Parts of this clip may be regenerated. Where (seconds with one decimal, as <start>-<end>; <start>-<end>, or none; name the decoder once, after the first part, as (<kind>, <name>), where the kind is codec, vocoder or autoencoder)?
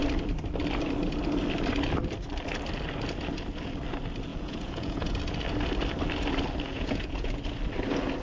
4.3-5.2 (vocoder, Vocos); 6.7-7.4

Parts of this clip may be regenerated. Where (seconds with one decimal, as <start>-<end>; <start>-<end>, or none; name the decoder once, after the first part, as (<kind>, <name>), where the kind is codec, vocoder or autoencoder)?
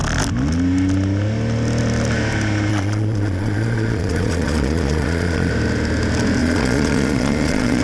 2.7-5.5 (vocoder, Vocos); 6.4-7.8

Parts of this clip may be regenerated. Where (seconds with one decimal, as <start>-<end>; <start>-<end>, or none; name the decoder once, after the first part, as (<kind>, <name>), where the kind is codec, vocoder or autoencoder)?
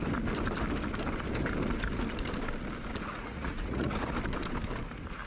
3.1-3.9 (vocoder, Vocos)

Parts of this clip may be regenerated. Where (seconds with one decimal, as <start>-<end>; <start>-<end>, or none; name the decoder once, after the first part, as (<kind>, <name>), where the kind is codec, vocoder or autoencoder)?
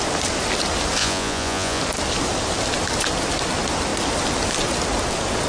1.0-1.8 (vocoder, Vocos)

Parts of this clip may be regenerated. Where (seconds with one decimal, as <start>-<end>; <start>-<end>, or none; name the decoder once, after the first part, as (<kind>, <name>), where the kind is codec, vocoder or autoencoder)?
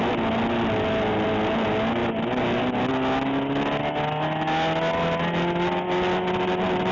none